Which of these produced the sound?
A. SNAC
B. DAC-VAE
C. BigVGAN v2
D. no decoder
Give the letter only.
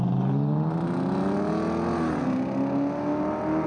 D